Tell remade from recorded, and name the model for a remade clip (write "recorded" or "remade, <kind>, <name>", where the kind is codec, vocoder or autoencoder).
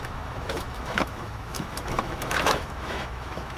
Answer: remade, autoencoder, DAC-VAE